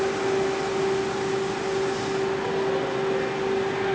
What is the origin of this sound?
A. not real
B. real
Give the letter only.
B